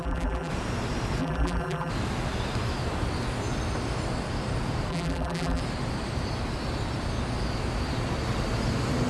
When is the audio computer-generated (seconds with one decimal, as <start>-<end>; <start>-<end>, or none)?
0.0-0.5; 1.2-1.9; 4.9-5.6